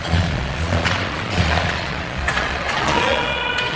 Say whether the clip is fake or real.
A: fake